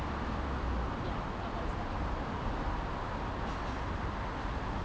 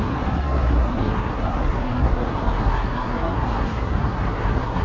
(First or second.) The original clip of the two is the first